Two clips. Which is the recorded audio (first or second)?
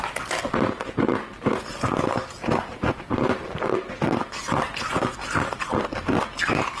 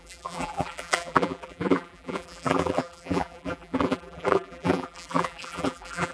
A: first